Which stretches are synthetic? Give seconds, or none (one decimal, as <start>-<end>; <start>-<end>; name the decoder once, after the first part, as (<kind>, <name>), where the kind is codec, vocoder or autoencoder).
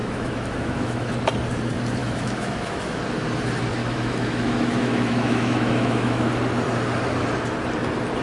0.0-1.1 (autoencoder, DAC-VAE); 2.0-3.0; 3.8-6.3